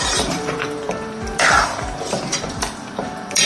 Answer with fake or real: fake